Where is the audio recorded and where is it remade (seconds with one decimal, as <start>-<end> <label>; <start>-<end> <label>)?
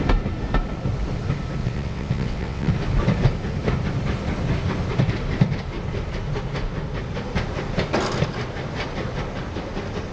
0.0-1.6 recorded; 1.6-2.7 remade; 2.7-10.1 recorded